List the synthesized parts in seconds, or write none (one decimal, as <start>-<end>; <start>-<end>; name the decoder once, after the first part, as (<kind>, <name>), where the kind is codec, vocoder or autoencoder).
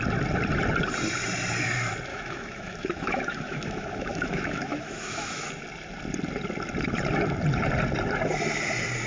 2.1-5.5 (autoencoder, DAC-VAE)